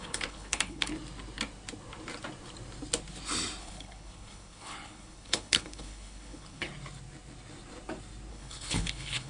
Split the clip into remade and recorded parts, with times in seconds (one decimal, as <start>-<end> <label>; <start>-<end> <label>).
0.0-0.9 remade; 0.9-3.6 recorded; 3.6-6.7 remade; 6.7-8.3 recorded; 8.3-9.3 remade